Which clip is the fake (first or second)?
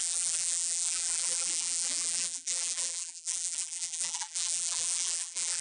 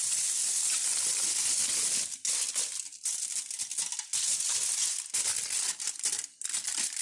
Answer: first